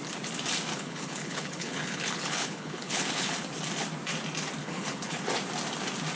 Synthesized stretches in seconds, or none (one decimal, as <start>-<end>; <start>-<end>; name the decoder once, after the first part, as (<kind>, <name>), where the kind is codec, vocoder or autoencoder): 0.7-3.3 (codec, HILCodec); 4.6-5.2